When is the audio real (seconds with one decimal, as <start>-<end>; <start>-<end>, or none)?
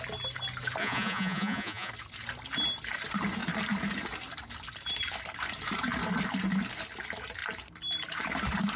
0.0-0.8; 1.9-8.8